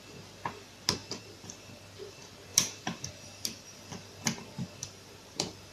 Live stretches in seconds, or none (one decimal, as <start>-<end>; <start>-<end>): 0.0-1.0; 1.8-2.5; 3.1-4.8